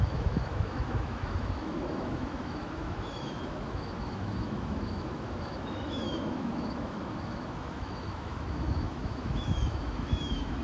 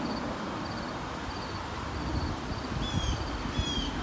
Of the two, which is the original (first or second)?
second